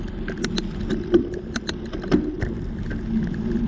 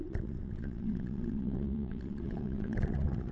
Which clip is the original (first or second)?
first